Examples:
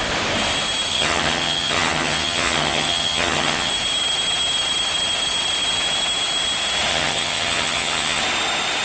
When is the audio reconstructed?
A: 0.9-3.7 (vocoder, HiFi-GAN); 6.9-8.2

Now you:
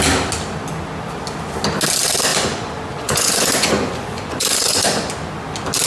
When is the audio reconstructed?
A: 2.3-5.1 (vocoder, Vocos)

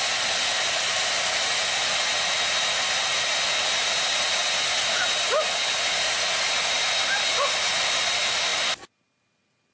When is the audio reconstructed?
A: none

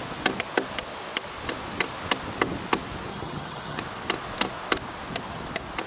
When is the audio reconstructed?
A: 3.1-3.8 (vocoder, HiFi-GAN)

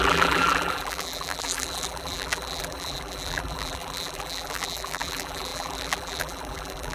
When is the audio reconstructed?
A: 0.0-6.9 (vocoder, BigVGAN v2)

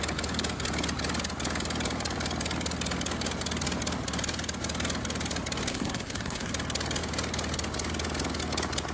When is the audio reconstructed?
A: 5.7-6.5 (codec, SNAC)